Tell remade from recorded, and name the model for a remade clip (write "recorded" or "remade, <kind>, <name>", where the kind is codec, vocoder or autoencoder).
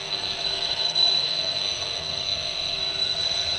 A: remade, codec, SNAC